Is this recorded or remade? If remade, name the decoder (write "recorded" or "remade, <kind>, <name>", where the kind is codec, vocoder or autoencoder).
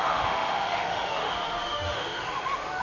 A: remade, autoencoder, DAC-VAE